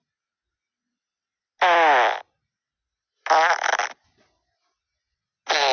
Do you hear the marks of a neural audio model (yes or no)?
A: no